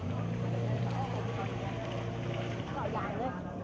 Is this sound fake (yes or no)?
yes